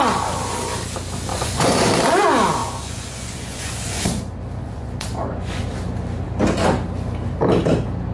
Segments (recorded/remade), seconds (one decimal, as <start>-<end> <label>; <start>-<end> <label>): 0.0-1.3 recorded; 1.3-1.9 remade; 1.9-2.6 recorded; 2.6-4.0 remade; 4.0-4.6 recorded; 4.6-5.6 remade; 5.6-8.1 recorded

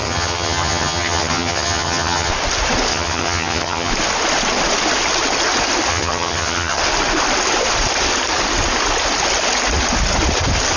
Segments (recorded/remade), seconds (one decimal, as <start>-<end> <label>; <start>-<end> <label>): 0.0-2.3 remade; 2.3-2.9 recorded; 2.9-3.9 remade; 3.9-5.9 recorded; 5.9-6.8 remade; 6.8-10.8 recorded

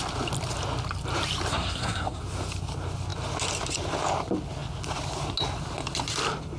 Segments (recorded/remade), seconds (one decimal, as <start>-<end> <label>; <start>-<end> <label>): 0.0-1.5 recorded; 1.5-2.2 remade; 2.2-6.6 recorded

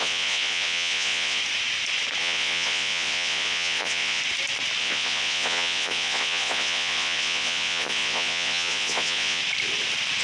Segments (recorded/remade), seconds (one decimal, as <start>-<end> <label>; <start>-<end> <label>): 0.0-1.4 remade; 1.4-2.2 recorded; 2.2-4.2 remade; 4.2-4.8 recorded; 4.8-9.4 remade; 9.4-10.2 recorded

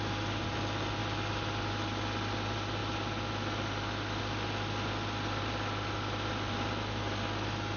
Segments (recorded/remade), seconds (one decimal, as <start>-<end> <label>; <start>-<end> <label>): 0.0-7.8 recorded

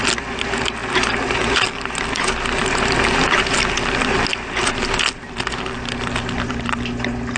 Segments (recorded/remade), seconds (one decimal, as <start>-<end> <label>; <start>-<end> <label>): 0.0-7.4 recorded

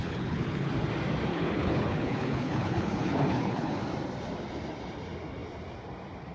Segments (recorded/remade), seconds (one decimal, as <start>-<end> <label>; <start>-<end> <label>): 0.0-0.7 remade; 0.7-1.3 recorded; 1.3-3.8 remade; 3.8-6.3 recorded